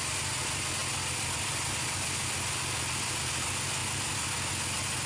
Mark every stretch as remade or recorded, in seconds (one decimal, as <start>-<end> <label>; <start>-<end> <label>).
0.0-5.1 recorded